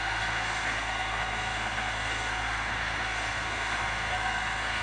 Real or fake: fake